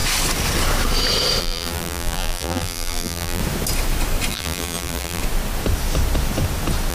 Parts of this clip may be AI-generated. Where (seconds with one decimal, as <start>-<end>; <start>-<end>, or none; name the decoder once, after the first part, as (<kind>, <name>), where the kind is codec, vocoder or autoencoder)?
1.4-3.4 (vocoder, BigVGAN v2); 4.3-5.2